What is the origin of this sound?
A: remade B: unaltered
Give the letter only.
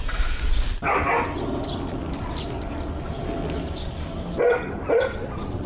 B